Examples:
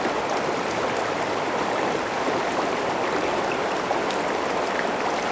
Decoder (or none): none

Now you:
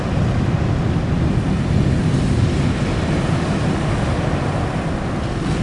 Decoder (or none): none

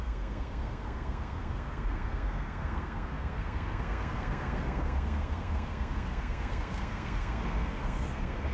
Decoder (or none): codec, SNAC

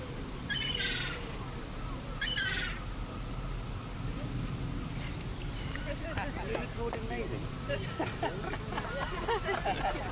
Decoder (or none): none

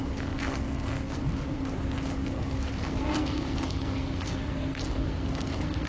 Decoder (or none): codec, SNAC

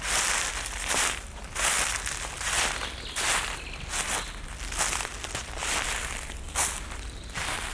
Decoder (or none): none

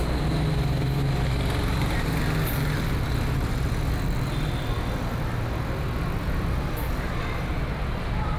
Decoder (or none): none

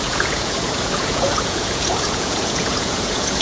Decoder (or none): vocoder, Vocos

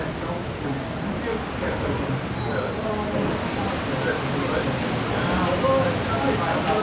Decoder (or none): none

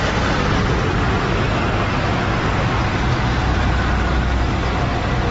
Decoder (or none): none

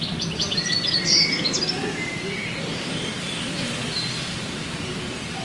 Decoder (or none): none